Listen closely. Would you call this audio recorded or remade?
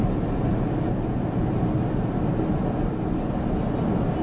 recorded